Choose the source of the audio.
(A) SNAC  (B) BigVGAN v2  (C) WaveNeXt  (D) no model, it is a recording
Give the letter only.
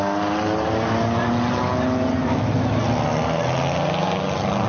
D